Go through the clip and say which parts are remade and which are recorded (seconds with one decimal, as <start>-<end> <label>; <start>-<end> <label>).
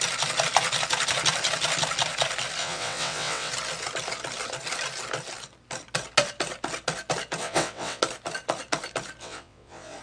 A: 0.0-2.6 recorded; 2.6-3.5 remade; 3.5-7.4 recorded; 7.4-8.0 remade; 8.0-9.2 recorded; 9.2-10.0 remade